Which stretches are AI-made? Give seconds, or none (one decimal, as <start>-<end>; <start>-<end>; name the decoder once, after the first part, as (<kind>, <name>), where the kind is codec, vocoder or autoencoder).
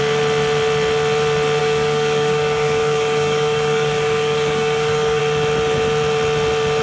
1.6-5.2 (codec, DAC)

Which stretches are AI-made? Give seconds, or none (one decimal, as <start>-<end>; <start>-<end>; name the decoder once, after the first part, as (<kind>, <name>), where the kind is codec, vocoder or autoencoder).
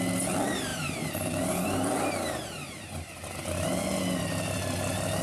0.7-3.8 (vocoder, BigVGAN v2)